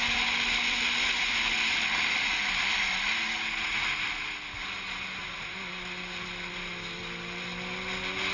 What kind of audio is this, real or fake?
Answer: real